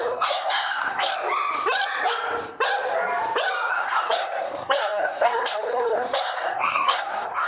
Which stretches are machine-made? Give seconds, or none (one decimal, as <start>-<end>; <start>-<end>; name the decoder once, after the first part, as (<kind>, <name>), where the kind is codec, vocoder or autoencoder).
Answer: 0.0-1.1 (codec, SNAC); 3.7-7.5